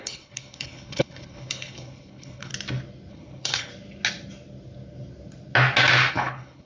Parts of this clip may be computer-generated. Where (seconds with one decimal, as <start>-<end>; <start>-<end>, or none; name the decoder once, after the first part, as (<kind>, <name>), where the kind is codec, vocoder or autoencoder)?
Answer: 0.0-2.5 (codec, HILCodec); 3.1-3.7; 6.1-6.7